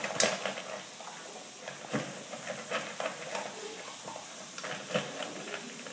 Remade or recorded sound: recorded